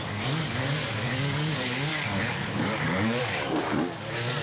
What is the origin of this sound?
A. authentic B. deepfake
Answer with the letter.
B